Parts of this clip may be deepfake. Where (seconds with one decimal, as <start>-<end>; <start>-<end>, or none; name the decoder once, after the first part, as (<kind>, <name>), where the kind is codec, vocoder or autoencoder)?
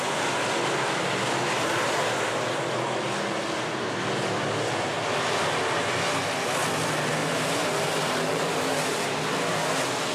7.2-9.3 (vocoder, BigVGAN v2)